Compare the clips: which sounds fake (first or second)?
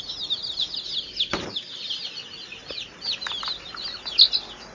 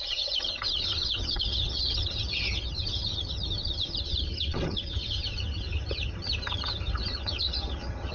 second